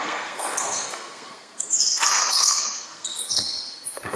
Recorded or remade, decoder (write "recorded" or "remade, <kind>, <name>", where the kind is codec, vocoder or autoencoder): remade, codec, SNAC